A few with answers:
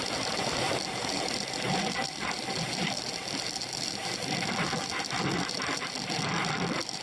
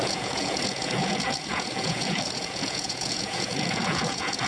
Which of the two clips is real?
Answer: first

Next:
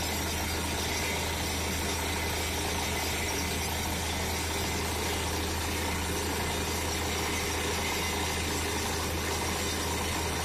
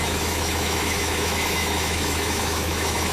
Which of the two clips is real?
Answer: first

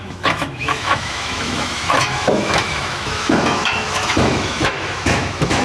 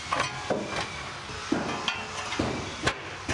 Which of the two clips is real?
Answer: second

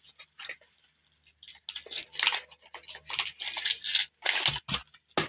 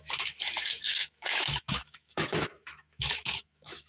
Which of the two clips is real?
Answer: first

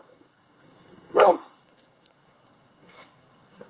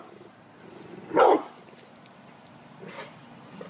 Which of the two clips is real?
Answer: second